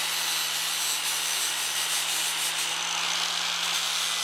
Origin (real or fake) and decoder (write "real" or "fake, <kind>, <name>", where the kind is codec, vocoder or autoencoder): real